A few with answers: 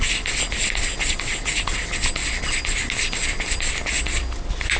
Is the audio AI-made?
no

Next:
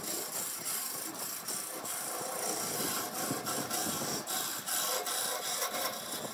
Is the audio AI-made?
no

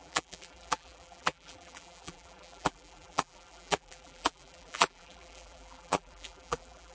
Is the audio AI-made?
yes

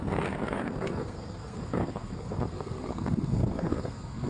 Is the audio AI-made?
yes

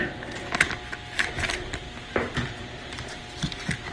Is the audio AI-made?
no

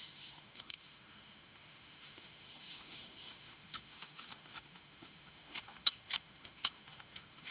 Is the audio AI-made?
yes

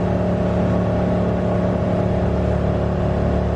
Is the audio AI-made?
no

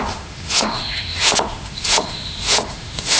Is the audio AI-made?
yes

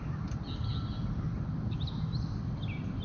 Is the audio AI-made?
no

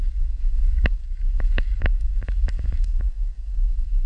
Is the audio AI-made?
yes